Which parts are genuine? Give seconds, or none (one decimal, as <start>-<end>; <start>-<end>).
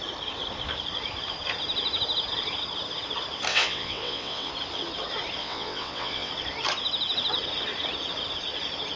0.0-3.5; 4.5-5.4; 6.3-9.0